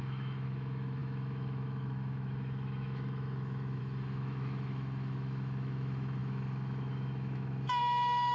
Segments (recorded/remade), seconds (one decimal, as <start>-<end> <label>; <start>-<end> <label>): 0.0-8.3 remade